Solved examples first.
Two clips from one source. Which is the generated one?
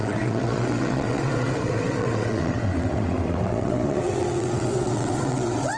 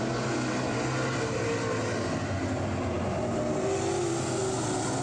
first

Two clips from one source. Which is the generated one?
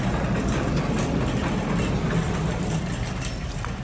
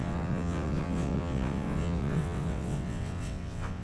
second